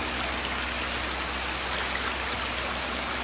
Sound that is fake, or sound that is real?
real